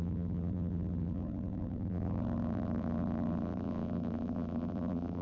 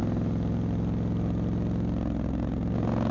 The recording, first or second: second